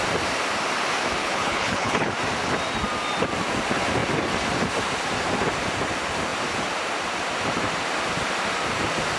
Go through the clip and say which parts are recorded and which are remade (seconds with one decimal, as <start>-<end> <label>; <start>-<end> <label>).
0.0-1.2 recorded; 1.2-2.1 remade; 2.1-9.2 recorded